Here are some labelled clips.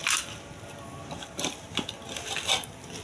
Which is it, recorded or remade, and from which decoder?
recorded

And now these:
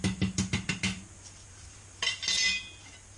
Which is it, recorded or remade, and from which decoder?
recorded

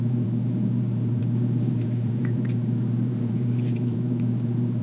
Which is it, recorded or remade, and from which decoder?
remade, vocoder, BigVGAN v2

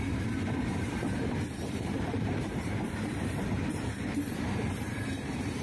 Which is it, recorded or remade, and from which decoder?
remade, vocoder, BigVGAN v2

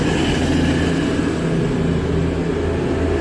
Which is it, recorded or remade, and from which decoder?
recorded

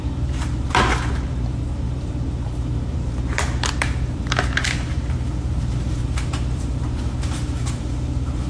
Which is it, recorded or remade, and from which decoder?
remade, vocoder, BigVGAN v2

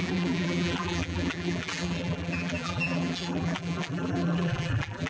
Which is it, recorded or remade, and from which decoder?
remade, vocoder, BigVGAN v2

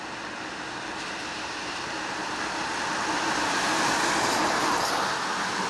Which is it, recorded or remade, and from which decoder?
recorded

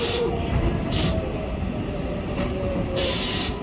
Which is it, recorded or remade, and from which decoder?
remade, vocoder, BigVGAN v2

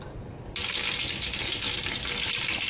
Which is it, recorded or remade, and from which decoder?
recorded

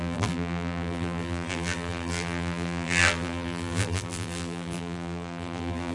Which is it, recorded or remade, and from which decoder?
remade, vocoder, BigVGAN v2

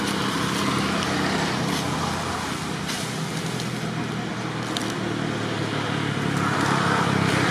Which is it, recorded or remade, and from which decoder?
recorded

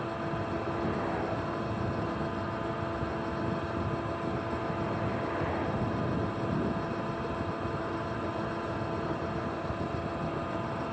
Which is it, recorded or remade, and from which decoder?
recorded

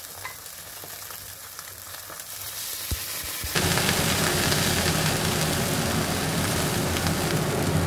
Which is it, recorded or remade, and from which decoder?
recorded